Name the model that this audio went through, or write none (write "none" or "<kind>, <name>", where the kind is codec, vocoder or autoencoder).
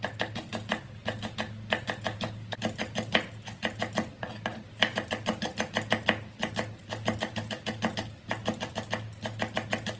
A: none